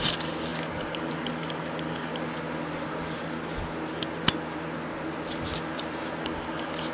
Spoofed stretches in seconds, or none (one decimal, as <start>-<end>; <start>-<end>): 0.0-2.1; 6.2-6.9